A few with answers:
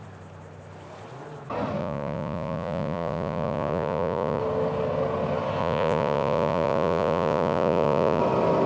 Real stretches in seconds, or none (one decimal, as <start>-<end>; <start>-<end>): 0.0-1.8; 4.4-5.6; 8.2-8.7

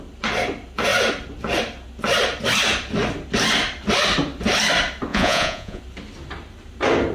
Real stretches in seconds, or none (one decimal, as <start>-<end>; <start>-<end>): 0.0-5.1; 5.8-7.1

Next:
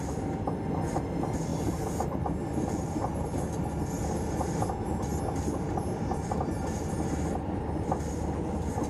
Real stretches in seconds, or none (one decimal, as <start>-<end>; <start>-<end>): 0.0-8.9

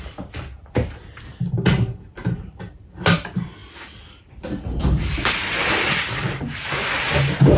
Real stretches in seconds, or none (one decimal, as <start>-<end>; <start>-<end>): 0.0-2.2; 3.1-7.6